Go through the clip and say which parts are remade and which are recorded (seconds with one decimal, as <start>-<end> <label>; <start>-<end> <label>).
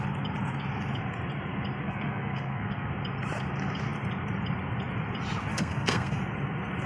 0.0-1.8 recorded; 1.8-2.9 remade; 2.9-5.5 recorded; 5.5-6.2 remade; 6.2-6.9 recorded